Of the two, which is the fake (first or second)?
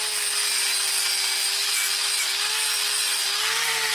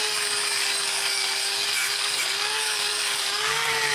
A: second